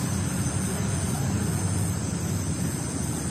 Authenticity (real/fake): real